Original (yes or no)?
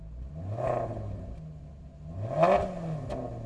yes